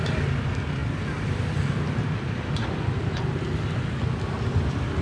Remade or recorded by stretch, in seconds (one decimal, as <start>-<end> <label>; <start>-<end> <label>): 0.0-0.8 recorded; 0.8-3.1 remade; 3.1-5.0 recorded